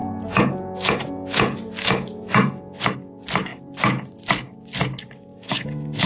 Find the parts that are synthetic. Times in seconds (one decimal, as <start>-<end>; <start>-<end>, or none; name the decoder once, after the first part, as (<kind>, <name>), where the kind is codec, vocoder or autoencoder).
0.0-2.8 (vocoder, Vocos); 5.3-6.1